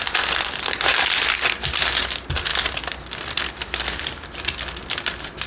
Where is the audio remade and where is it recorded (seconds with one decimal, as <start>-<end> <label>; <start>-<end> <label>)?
0.0-5.5 recorded